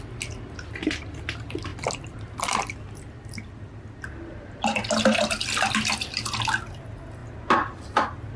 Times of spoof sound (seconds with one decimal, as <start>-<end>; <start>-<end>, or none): none